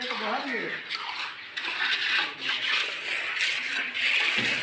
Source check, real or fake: real